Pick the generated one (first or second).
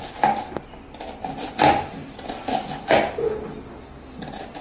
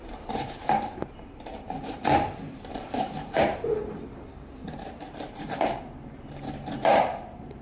second